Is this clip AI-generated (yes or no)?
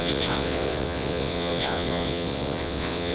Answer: yes